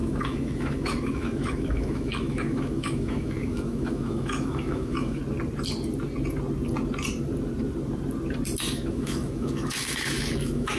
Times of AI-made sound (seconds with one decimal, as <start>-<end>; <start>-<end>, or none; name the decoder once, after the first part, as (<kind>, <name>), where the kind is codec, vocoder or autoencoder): 0.0-5.2 (autoencoder, DAC-VAE); 8.6-10.8